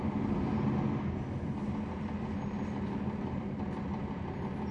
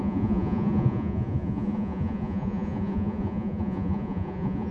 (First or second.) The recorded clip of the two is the first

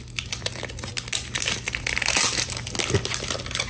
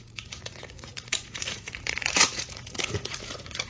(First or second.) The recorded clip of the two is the first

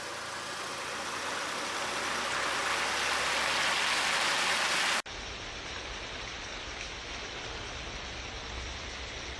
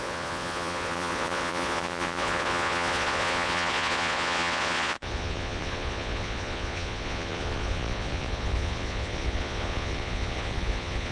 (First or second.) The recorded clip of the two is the first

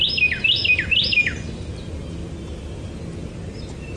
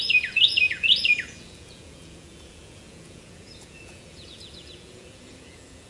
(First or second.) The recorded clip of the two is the first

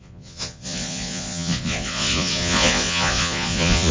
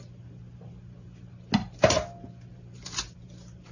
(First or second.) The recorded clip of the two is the second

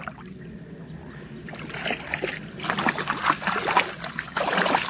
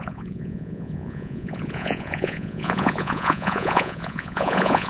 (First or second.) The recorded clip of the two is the first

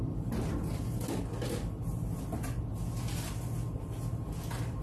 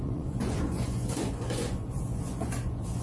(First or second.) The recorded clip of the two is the first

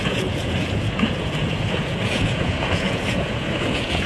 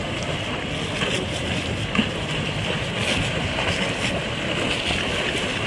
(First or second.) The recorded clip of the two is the second